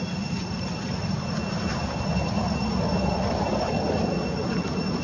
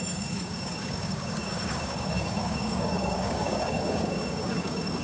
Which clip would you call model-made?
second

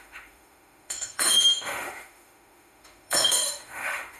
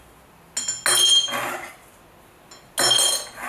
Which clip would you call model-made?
first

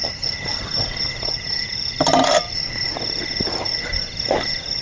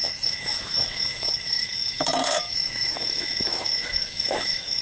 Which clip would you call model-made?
second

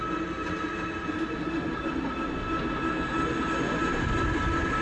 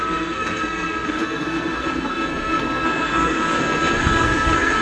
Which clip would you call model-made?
second